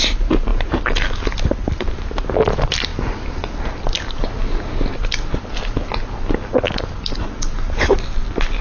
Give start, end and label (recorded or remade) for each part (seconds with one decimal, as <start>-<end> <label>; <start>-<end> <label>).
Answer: 0.0-8.6 recorded